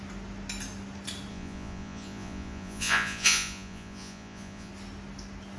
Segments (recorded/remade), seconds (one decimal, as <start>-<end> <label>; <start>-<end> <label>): 0.0-1.3 recorded; 1.3-4.7 remade; 4.7-5.6 recorded